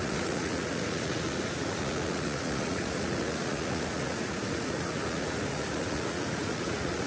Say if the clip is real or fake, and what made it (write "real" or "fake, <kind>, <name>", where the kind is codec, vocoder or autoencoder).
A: fake, vocoder, Vocos